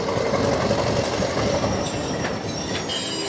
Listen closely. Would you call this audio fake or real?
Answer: real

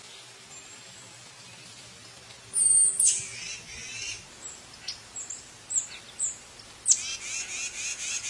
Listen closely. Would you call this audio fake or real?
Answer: real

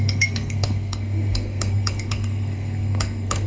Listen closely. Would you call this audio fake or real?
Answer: fake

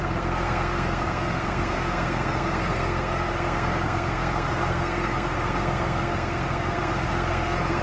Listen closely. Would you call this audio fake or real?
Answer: fake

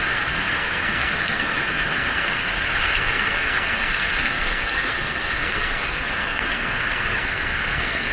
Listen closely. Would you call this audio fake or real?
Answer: fake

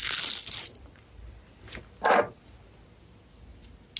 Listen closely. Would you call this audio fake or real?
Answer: real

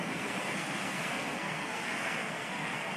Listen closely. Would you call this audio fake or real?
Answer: fake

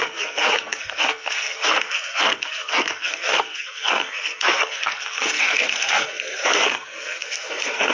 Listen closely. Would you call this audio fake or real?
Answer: fake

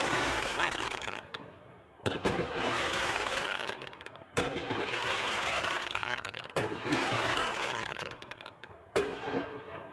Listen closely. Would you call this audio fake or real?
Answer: fake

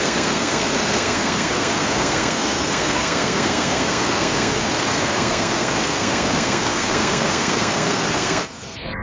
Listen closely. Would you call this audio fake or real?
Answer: fake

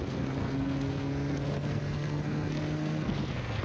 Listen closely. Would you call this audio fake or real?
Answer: fake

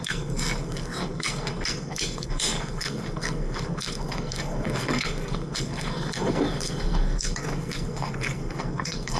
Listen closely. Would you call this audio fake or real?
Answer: fake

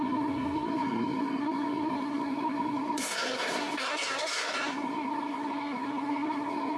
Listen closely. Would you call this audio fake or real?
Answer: fake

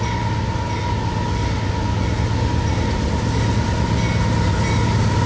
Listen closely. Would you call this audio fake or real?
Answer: real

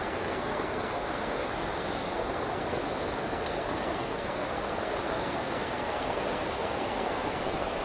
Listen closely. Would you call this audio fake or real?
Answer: fake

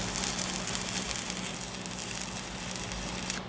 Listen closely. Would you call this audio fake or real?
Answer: real